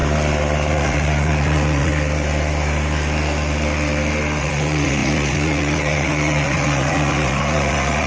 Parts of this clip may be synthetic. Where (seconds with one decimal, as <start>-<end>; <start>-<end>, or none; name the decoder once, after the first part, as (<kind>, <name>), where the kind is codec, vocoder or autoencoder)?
0.7-1.9 (vocoder, Vocos); 4.4-8.1